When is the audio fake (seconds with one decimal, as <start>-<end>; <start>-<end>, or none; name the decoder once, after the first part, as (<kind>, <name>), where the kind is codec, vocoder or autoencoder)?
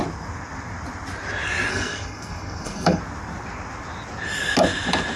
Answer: 1.7-3.0 (codec, SNAC)